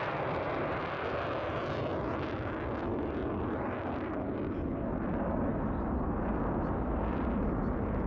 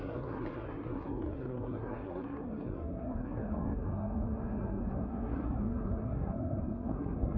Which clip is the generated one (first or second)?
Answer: second